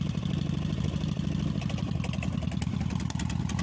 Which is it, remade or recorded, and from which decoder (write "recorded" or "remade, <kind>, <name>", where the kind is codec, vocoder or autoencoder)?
recorded